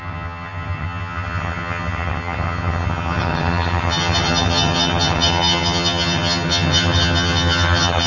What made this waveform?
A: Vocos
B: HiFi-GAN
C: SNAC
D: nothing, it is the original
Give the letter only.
B